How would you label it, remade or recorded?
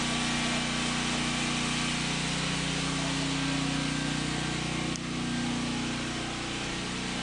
recorded